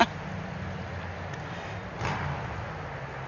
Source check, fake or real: real